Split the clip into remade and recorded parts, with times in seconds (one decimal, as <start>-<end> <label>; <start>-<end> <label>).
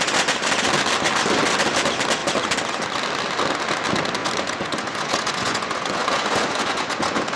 0.0-4.2 recorded; 4.2-7.4 remade